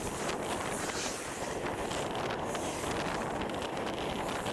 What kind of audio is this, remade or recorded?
recorded